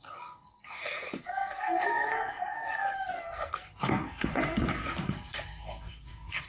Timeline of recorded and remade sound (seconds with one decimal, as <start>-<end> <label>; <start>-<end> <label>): 0.0-6.5 remade